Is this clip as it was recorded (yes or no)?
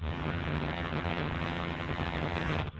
no